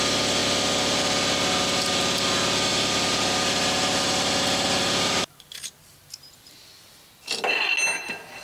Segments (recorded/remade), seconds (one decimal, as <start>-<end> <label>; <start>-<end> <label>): 0.0-2.7 recorded; 2.7-6.9 remade; 6.9-8.4 recorded